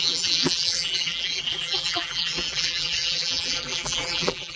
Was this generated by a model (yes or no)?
yes